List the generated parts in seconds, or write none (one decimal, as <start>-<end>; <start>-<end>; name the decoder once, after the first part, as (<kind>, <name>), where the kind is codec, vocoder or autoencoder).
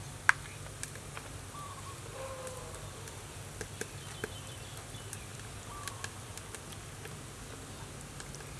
none